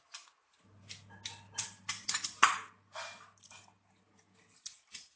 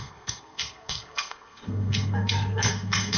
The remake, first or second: second